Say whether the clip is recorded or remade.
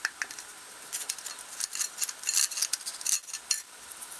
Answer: recorded